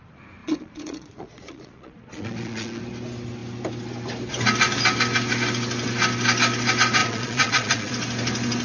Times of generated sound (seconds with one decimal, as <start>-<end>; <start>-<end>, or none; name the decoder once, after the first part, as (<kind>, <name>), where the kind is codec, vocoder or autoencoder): 0.4-2.8 (vocoder, Vocos); 7.0-7.9